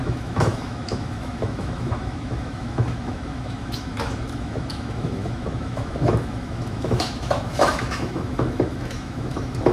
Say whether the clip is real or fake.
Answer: fake